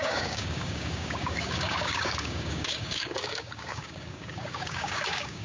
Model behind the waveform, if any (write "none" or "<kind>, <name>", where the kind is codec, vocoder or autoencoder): codec, DAC